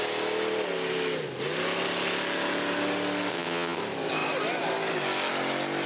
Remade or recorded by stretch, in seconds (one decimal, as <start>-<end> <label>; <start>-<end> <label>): 0.0-3.3 recorded; 3.3-3.8 remade; 3.8-5.9 recorded